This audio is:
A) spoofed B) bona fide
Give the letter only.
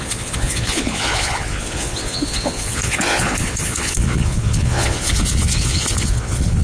A